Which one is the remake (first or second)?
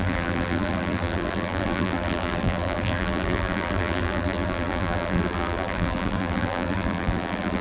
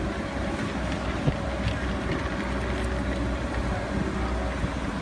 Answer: first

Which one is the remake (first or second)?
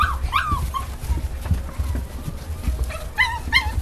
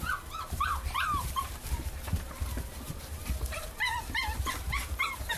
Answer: second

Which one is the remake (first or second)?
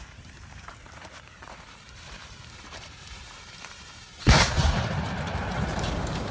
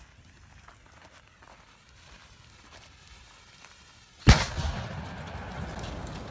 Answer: first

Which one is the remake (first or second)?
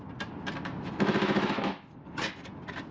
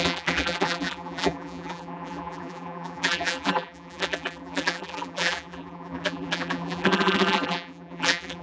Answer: second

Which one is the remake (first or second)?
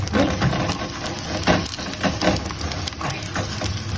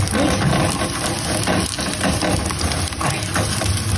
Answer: second